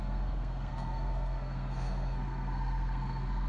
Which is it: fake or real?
fake